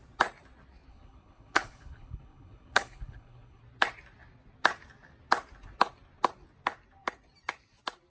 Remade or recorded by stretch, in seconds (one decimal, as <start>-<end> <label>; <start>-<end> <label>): 0.0-0.9 recorded; 0.9-3.6 remade; 3.6-8.1 recorded